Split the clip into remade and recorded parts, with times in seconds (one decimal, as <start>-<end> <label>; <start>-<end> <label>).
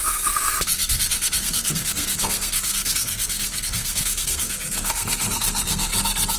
0.0-5.9 remade; 5.9-6.4 recorded